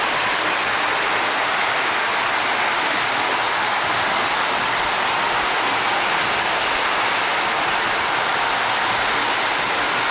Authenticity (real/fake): real